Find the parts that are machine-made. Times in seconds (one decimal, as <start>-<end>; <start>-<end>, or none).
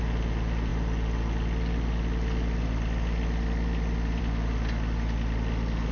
none